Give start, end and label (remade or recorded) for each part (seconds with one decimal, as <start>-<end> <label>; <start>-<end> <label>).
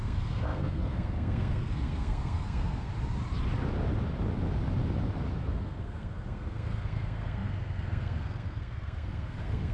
0.0-2.9 remade; 2.9-5.3 recorded; 5.3-9.7 remade